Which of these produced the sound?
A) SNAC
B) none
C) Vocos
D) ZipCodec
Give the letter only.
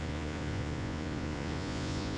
C